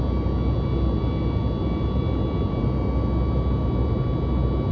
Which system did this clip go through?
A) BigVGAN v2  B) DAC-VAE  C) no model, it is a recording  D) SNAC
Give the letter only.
C